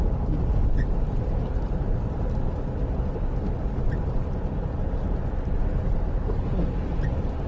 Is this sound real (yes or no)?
yes